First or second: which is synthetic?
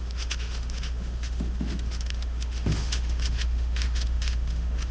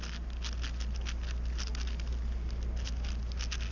first